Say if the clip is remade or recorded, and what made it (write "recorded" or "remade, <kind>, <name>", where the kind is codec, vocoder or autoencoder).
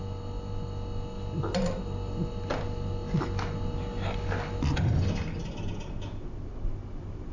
recorded